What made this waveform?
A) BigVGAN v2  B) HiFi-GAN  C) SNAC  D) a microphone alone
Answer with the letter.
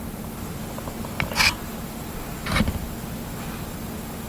D